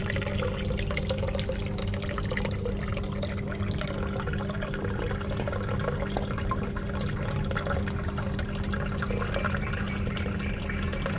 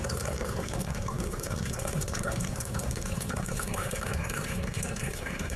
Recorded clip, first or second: first